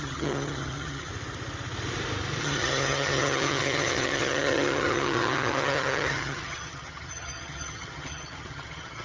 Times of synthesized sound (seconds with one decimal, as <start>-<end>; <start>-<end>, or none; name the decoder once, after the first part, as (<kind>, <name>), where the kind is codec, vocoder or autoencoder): 0.0-1.1 (vocoder, HiFi-GAN); 2.4-9.0